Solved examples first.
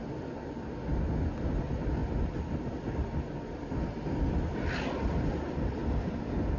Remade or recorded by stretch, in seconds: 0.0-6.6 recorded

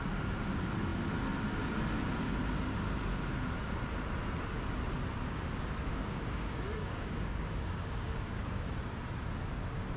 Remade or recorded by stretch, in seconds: 0.0-5.9 recorded; 5.9-8.7 remade; 8.7-10.0 recorded